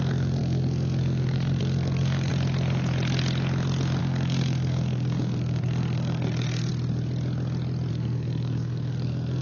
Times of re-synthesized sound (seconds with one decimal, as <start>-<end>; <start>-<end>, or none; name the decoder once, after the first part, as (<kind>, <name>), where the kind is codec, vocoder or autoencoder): 0.0-2.3 (codec, SNAC); 4.0-6.7; 7.9-9.4